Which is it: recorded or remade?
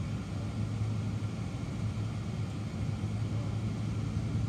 recorded